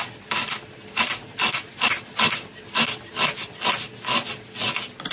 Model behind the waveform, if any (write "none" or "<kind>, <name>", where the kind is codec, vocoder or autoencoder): none